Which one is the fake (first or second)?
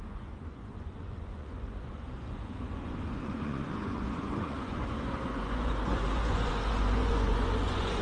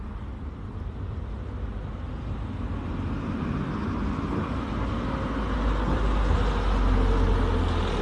first